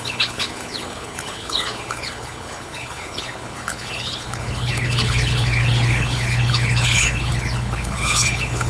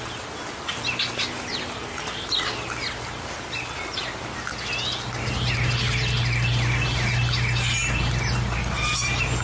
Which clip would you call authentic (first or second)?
second